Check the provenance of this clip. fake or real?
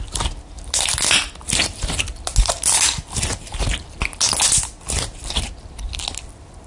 real